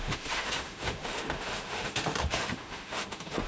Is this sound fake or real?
fake